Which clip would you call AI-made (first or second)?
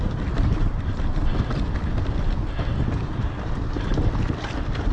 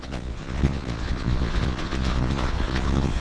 second